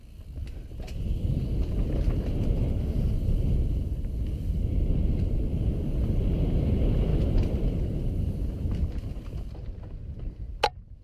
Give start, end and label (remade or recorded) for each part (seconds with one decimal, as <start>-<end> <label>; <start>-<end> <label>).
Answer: 0.0-11.0 recorded